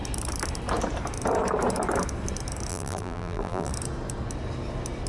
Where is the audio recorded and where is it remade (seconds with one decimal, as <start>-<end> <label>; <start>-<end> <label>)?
0.0-2.7 recorded; 2.7-3.7 remade; 3.7-5.1 recorded